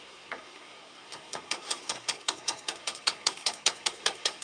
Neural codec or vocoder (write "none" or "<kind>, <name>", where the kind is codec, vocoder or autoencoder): codec, SNAC